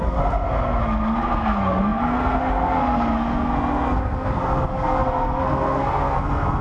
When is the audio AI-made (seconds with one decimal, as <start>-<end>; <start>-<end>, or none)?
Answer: 0.0-6.6